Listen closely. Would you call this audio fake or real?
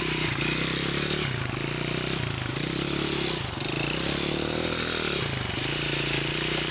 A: real